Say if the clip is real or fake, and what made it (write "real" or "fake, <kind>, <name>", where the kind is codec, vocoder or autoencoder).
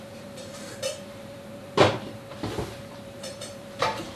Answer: fake, vocoder, BigVGAN v2